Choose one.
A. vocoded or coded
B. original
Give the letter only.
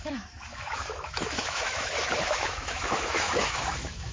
A